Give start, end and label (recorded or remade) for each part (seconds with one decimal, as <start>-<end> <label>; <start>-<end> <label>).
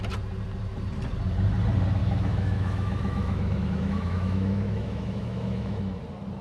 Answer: 0.0-2.0 recorded; 2.0-5.8 remade; 5.8-6.4 recorded